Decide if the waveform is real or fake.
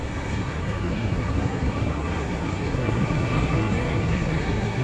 fake